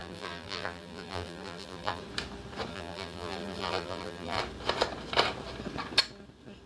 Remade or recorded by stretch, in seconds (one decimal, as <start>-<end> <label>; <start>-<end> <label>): 0.0-2.0 remade; 2.0-2.7 recorded; 2.7-4.4 remade; 4.4-6.7 recorded

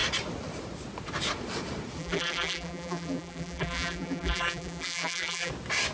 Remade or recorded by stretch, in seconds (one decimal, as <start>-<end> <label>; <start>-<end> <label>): 0.0-2.0 recorded; 2.0-5.5 remade; 5.5-5.9 recorded

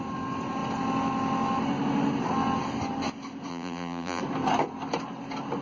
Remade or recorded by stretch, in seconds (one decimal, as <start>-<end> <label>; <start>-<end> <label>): 0.0-3.5 recorded; 3.5-4.2 remade; 4.2-5.6 recorded

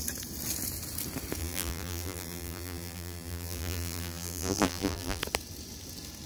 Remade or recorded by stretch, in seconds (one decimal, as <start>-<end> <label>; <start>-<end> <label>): 0.0-1.4 recorded; 1.4-5.2 remade; 5.2-6.3 recorded

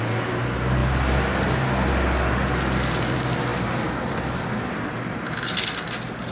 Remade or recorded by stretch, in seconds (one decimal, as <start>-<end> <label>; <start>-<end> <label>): 0.0-6.3 recorded

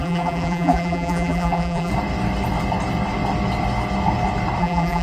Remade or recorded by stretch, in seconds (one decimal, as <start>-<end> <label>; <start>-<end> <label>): 0.0-1.9 remade; 1.9-4.6 recorded; 4.6-5.0 remade